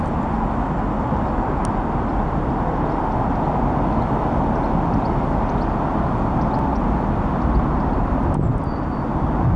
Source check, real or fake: real